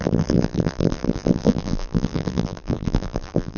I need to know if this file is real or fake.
fake